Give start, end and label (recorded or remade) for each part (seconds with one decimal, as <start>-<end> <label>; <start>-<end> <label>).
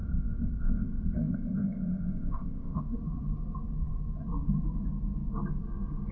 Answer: 0.0-2.8 remade; 2.8-6.1 recorded